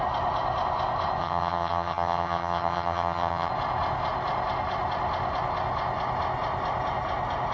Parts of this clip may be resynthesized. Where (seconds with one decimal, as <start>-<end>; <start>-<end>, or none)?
1.2-3.5